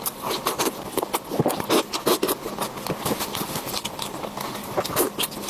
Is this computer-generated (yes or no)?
no